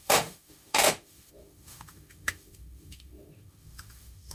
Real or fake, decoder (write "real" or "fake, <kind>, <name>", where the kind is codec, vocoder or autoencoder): fake, autoencoder, DAC-VAE